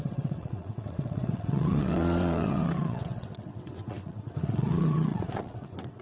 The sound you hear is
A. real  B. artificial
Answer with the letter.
B